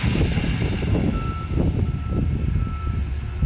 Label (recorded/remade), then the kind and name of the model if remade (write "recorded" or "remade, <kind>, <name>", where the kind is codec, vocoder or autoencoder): recorded